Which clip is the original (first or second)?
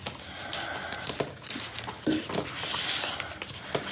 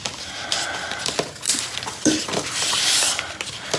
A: first